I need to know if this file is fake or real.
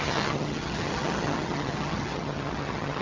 fake